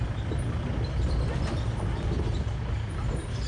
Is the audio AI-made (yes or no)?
no